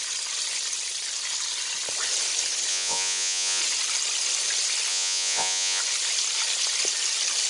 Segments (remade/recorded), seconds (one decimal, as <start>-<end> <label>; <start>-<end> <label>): 0.0-2.7 recorded; 2.7-3.6 remade; 3.6-4.9 recorded; 4.9-5.8 remade; 5.8-7.5 recorded